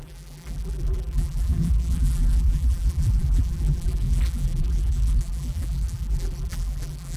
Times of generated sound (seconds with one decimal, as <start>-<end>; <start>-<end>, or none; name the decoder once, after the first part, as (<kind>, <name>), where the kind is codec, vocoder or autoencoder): 0.0-7.2 (vocoder, BigVGAN v2)